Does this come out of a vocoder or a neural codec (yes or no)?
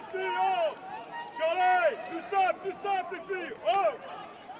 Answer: no